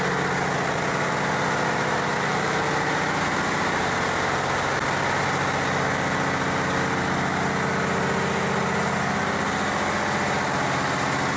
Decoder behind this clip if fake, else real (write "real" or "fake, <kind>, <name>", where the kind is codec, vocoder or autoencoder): real